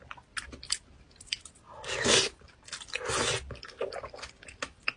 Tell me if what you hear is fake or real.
real